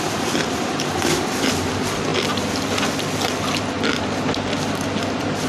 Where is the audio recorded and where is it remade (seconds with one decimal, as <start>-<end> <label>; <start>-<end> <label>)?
0.0-5.5 recorded